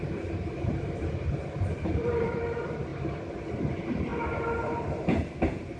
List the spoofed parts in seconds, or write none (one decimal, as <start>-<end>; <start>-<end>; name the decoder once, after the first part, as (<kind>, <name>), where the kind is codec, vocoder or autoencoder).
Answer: 0.0-2.9 (vocoder, BigVGAN v2); 3.5-4.1; 4.6-5.8